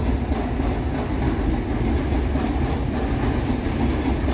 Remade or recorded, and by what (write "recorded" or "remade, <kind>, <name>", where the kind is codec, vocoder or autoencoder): recorded